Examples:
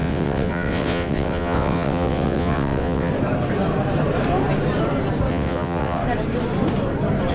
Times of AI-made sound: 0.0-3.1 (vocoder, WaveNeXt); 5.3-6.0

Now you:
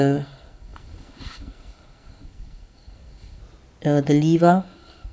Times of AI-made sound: 0.0-3.4 (codec, SNAC); 4.4-5.1

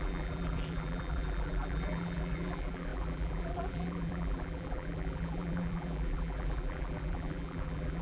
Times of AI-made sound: 0.0-8.0 (vocoder, BigVGAN v2)

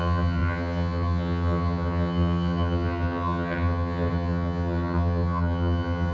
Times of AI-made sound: 0.0-6.1 (vocoder, HiFi-GAN)

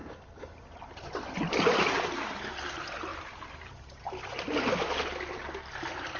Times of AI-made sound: none

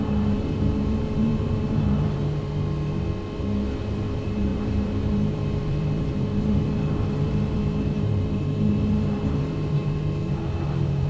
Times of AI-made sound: 0.0-2.2 (vocoder, BigVGAN v2); 3.8-11.1

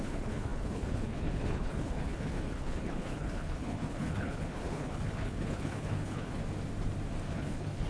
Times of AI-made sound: 0.0-6.4 (codec, HILCodec); 7.3-7.9